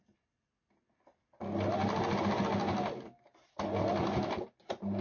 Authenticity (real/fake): real